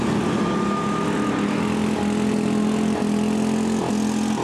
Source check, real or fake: real